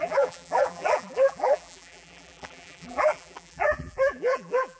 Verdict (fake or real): fake